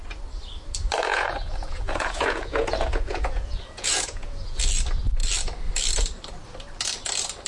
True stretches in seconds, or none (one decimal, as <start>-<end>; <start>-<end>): 0.0-1.1; 4.6-7.5